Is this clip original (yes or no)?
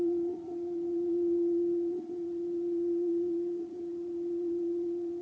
no